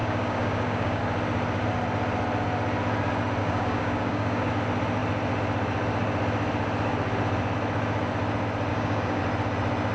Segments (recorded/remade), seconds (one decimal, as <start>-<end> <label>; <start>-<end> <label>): 0.0-1.0 remade; 1.0-3.4 recorded; 3.4-4.5 remade; 4.5-8.7 recorded; 8.7-9.2 remade; 9.2-9.9 recorded